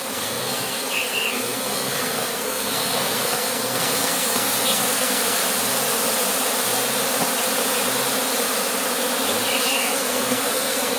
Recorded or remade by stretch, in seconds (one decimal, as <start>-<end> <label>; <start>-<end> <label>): 0.0-5.4 remade; 5.4-9.6 recorded; 9.6-11.0 remade